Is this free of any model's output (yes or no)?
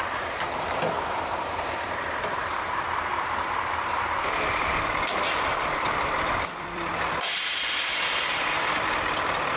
no